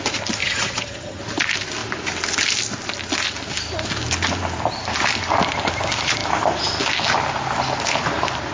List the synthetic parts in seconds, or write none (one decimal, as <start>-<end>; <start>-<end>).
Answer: 0.4-1.2

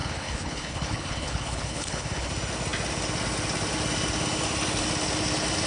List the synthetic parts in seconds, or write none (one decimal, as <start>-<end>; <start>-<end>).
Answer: 0.0-2.3

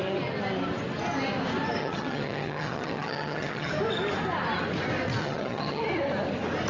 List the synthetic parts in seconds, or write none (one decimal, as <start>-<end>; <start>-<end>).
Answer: 1.8-3.7; 5.2-5.8